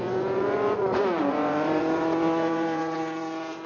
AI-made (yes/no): yes